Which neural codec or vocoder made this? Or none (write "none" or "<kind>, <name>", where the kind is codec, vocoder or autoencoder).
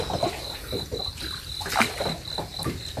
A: none